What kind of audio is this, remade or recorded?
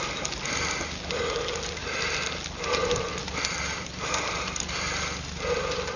recorded